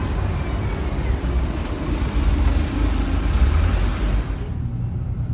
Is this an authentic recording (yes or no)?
yes